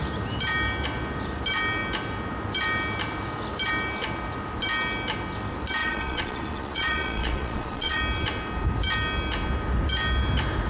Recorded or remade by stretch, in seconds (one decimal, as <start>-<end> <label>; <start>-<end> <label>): 0.0-5.8 recorded; 5.8-8.0 remade; 8.0-10.7 recorded